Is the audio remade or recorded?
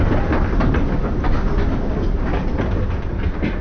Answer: recorded